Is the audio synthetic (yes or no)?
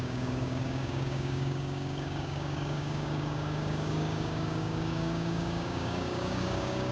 yes